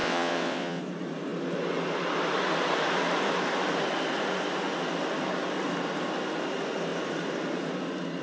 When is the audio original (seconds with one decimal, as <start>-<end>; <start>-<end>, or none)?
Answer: 0.8-8.2